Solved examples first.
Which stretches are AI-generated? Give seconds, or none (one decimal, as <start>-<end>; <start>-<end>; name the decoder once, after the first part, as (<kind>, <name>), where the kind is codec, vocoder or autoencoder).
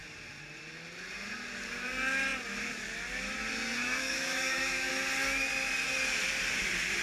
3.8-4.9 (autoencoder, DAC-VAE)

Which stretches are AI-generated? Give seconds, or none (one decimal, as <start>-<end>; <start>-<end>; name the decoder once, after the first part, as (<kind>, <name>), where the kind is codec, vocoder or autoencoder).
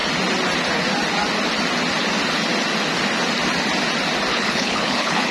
4.3-5.3 (codec, HILCodec)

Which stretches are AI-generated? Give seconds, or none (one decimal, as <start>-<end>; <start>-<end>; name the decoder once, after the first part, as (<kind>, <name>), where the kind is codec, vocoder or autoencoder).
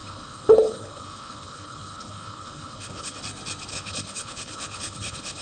0.0-3.2 (codec, HILCodec); 3.7-5.4